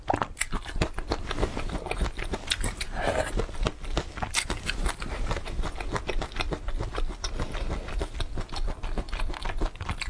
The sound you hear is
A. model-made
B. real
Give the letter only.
B